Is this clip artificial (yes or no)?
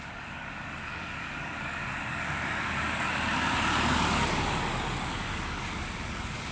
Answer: yes